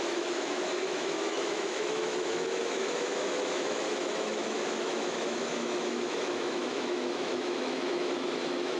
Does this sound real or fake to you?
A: fake